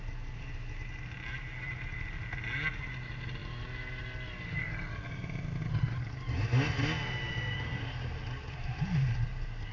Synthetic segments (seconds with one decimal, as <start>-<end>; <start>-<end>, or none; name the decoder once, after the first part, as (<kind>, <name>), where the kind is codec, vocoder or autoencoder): none